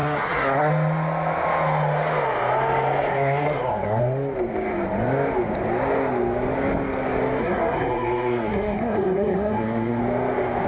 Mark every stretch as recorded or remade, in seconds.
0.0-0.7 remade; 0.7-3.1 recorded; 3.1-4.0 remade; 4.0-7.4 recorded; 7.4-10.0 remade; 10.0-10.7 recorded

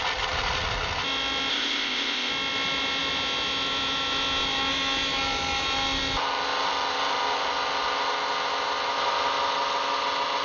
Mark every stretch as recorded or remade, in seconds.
0.0-1.5 recorded; 1.5-2.3 remade; 2.3-10.4 recorded

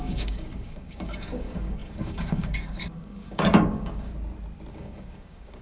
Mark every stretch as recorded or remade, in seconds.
0.0-4.1 remade; 4.1-4.7 recorded; 4.7-5.6 remade